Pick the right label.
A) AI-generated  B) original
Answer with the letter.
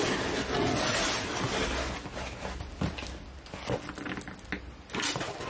B